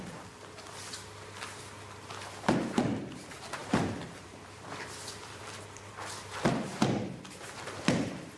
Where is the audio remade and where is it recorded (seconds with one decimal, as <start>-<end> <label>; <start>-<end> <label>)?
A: 0.0-3.6 recorded; 3.6-5.9 remade; 5.9-8.4 recorded